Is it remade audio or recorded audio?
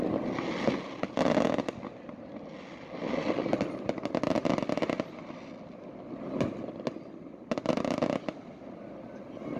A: recorded